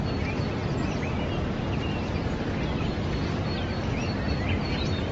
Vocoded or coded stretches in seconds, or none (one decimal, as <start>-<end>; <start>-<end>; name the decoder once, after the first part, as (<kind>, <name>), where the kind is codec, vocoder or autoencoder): none